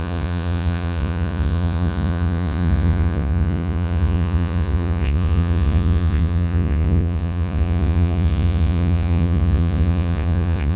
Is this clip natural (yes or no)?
no